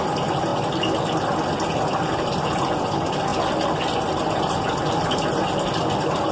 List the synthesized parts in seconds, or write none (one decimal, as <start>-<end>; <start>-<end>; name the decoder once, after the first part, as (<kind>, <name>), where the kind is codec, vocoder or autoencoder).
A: none